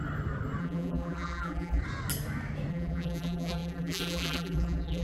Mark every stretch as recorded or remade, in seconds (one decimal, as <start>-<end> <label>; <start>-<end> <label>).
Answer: 0.0-0.6 recorded; 0.6-1.8 remade; 1.8-2.7 recorded; 2.7-5.0 remade